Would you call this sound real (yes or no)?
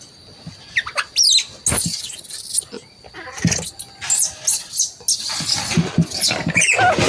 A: yes